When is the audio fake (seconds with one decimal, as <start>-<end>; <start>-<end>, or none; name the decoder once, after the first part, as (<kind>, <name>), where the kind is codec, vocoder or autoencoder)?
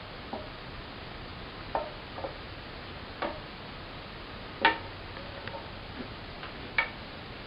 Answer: none